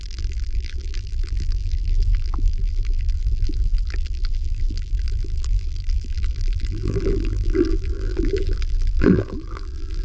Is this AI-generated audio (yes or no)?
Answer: yes